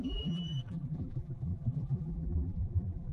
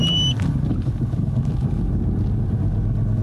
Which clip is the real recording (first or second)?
second